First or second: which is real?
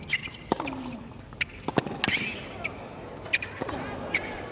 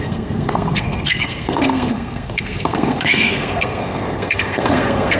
first